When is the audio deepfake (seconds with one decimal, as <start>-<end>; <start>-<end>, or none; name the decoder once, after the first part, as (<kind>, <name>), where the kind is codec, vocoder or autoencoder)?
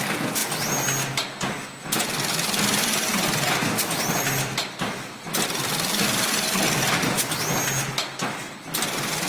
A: 3.1-6.6 (vocoder, BigVGAN v2)